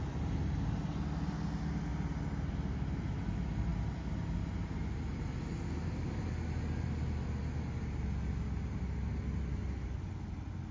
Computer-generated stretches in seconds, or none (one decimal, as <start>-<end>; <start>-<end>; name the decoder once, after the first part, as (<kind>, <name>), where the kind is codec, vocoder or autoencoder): none